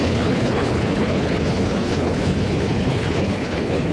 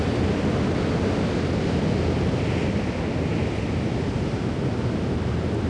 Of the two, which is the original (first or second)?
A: second